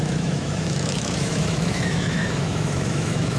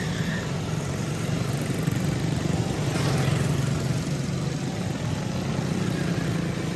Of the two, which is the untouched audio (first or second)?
second